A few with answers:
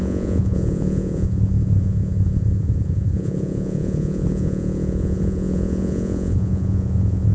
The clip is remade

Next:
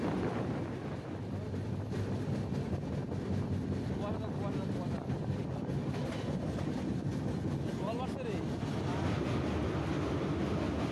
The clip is recorded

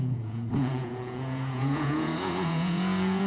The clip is remade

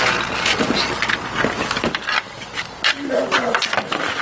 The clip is recorded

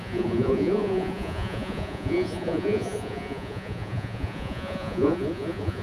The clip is remade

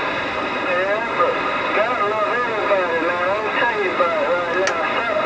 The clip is recorded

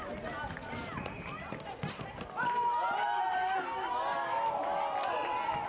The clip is recorded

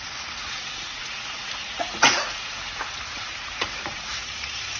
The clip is remade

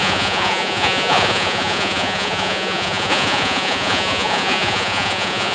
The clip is remade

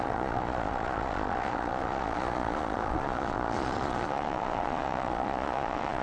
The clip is remade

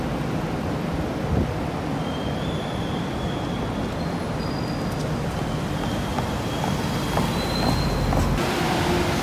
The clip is recorded